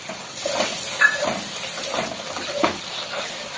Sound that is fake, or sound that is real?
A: fake